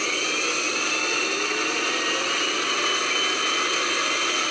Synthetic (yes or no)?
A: no